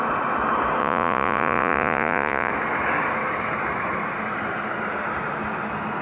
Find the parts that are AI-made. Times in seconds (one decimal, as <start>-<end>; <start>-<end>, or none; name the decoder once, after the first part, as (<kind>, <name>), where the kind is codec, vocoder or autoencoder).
0.8-2.5 (vocoder, Vocos)